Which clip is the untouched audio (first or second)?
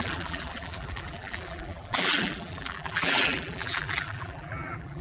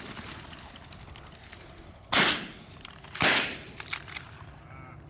second